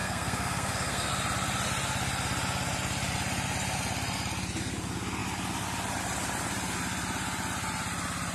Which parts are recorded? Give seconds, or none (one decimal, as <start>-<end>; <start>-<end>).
1.1-8.3